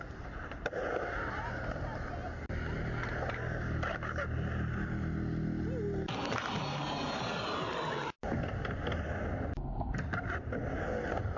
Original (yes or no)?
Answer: yes